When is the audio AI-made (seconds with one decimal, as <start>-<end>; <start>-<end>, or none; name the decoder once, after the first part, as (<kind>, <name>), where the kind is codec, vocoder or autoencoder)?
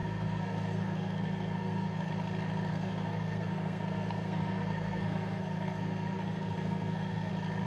0.0-2.1 (codec, SNAC); 2.7-7.3